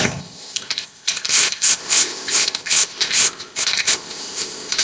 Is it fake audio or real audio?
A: fake